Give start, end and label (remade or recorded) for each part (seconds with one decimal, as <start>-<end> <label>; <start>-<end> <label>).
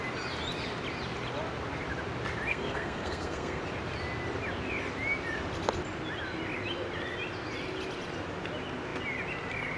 0.0-2.5 recorded; 2.5-3.6 remade; 3.6-9.8 recorded